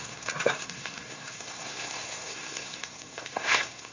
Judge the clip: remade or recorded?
remade